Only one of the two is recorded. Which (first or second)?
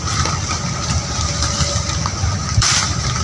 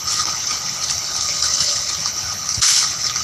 first